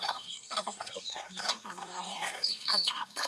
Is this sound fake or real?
fake